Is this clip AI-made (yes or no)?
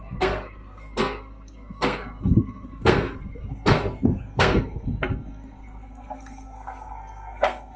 yes